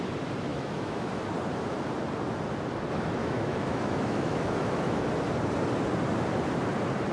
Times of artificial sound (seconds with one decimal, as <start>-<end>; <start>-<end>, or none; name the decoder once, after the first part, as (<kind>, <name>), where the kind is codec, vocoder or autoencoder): 0.5-1.2 (autoencoder, DAC-VAE); 3.2-5.0